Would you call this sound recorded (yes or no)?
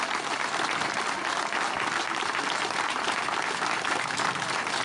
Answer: yes